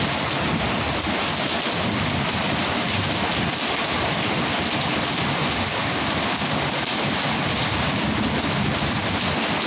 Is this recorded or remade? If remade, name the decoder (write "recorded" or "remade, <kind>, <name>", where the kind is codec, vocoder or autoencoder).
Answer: recorded